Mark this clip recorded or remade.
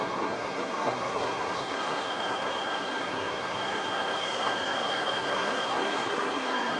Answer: remade